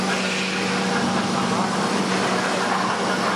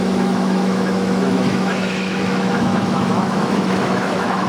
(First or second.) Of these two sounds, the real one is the first